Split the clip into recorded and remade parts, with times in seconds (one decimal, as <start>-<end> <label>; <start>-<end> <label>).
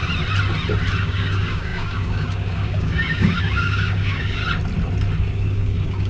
0.0-1.0 recorded; 1.0-4.4 remade; 4.4-5.2 recorded; 5.2-6.1 remade